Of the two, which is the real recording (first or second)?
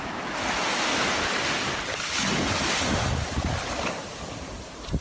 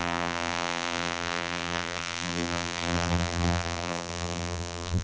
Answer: first